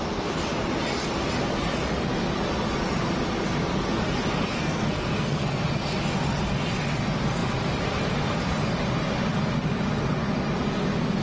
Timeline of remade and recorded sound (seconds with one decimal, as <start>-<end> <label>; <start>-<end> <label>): 0.0-4.5 recorded; 4.5-5.6 remade; 5.6-11.2 recorded